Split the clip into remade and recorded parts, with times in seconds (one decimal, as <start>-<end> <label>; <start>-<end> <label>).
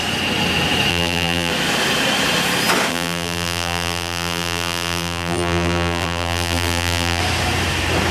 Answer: 0.0-0.9 recorded; 0.9-1.5 remade; 1.5-2.9 recorded; 2.9-7.2 remade; 7.2-8.1 recorded